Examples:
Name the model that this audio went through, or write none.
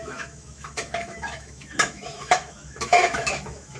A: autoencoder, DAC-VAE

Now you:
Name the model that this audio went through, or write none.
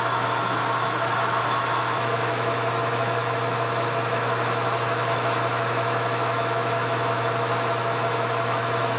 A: autoencoder, DAC-VAE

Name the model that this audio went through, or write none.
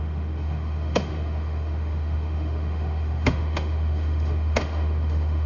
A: autoencoder, DAC-VAE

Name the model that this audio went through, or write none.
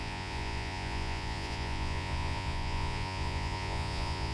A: vocoder, Vocos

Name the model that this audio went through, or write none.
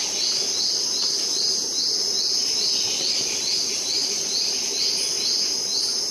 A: none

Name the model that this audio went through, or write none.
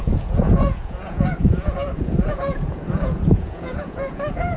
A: vocoder, Vocos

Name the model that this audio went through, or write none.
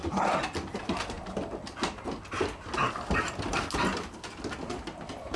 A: none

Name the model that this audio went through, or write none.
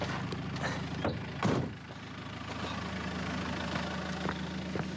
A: none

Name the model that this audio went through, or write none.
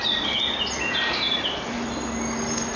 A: none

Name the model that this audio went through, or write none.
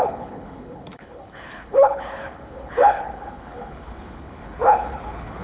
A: codec, HILCodec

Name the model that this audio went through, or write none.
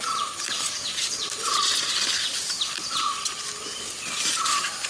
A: none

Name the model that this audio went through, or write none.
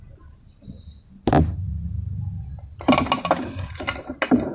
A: none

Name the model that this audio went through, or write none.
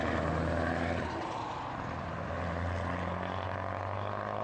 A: none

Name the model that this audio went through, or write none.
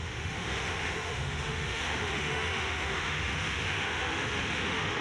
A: autoencoder, DAC-VAE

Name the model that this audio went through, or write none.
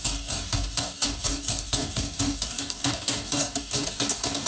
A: codec, DAC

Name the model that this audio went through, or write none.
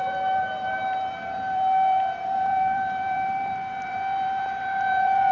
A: vocoder, BigVGAN v2